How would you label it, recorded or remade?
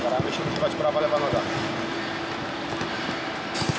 recorded